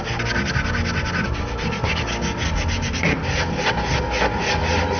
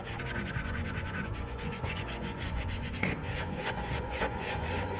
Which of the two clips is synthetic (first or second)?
second